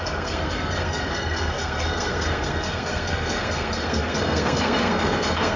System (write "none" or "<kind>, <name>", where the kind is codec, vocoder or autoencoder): codec, SNAC